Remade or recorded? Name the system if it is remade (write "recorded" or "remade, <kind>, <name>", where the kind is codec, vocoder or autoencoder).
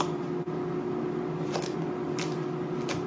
recorded